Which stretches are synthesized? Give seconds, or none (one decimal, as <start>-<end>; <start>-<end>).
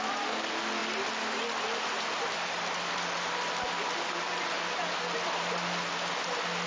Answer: none